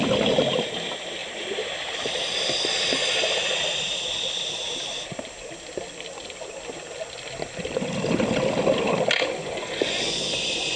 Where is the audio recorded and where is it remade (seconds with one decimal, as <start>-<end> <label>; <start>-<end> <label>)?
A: 0.0-9.4 recorded; 9.4-10.8 remade